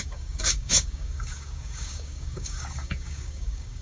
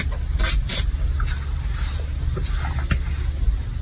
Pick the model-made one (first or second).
first